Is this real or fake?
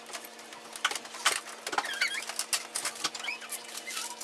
real